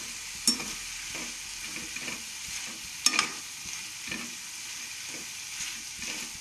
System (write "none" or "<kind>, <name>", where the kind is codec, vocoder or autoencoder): none